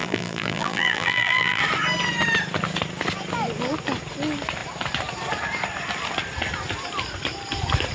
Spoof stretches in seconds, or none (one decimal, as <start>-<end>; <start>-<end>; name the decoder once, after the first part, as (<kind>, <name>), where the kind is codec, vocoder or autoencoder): 0.0-1.6 (vocoder, BigVGAN v2)